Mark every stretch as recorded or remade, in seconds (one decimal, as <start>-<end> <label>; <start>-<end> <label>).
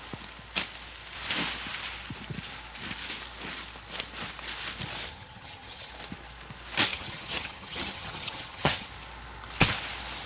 0.0-5.1 recorded; 5.1-5.9 remade; 5.9-6.9 recorded; 6.9-8.9 remade; 8.9-10.3 recorded